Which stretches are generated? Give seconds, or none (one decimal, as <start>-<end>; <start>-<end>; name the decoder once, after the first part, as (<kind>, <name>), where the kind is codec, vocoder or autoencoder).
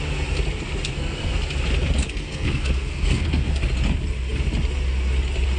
0.8-1.4 (codec, SNAC); 2.0-3.5